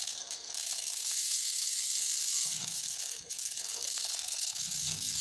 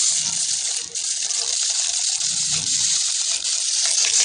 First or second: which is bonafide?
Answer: second